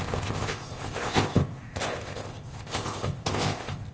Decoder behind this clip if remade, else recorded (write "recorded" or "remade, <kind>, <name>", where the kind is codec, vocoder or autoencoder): remade, codec, ZipCodec